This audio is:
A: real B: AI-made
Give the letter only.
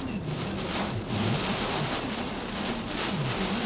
A